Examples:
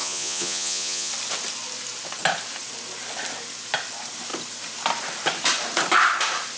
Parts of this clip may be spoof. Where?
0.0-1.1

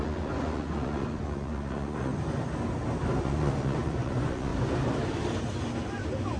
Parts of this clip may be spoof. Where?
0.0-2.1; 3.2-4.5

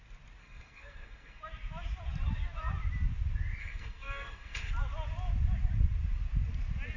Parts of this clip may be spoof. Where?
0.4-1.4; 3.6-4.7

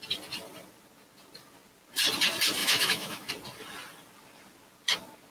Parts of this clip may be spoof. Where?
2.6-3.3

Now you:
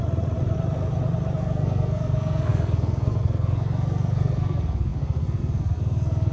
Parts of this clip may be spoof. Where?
1.4-6.3

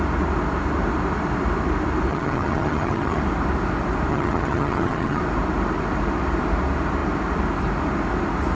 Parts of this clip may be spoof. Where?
2.1-3.2; 4.1-5.2

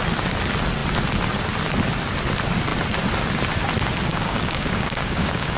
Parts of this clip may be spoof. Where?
4.1-5.6

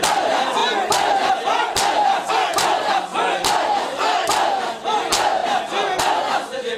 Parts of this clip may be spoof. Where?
3.1-5.0